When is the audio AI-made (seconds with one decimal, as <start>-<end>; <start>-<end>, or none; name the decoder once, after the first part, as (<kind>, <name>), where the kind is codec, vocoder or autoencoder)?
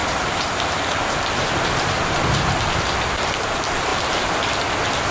0.0-3.1 (vocoder, BigVGAN v2)